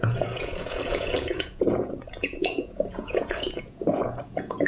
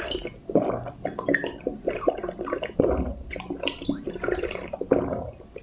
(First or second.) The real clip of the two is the second